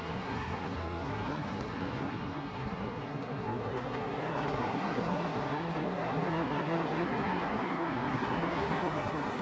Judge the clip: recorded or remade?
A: remade